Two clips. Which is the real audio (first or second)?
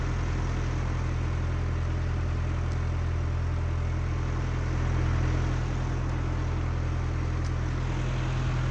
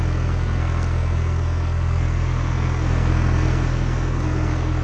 first